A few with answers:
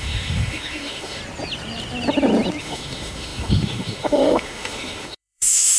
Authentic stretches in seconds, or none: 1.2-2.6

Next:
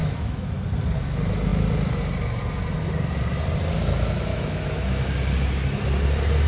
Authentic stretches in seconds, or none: 0.5-4.3; 5.1-6.5